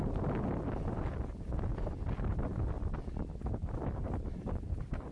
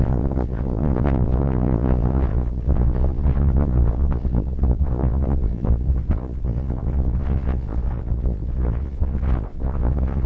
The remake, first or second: second